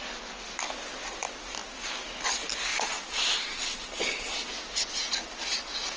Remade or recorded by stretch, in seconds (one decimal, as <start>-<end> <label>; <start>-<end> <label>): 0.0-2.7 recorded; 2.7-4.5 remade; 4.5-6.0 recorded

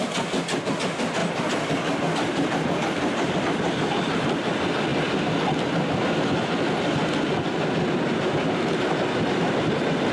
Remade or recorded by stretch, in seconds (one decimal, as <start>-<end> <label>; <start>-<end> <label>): 0.0-10.1 recorded

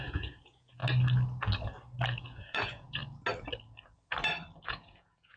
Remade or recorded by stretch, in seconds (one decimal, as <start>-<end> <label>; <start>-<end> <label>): 0.0-0.8 remade; 0.8-2.2 recorded; 2.2-3.0 remade; 3.0-4.6 recorded; 4.6-5.4 remade

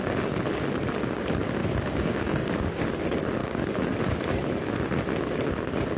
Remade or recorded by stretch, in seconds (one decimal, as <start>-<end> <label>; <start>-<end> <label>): 0.0-1.6 recorded; 1.6-2.8 remade; 2.8-3.4 recorded; 3.4-4.0 remade; 4.0-6.0 recorded

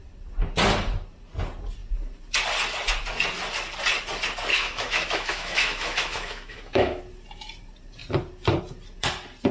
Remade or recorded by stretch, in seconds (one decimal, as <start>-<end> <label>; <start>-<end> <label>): 0.0-4.5 recorded; 4.5-7.0 remade; 7.0-9.5 recorded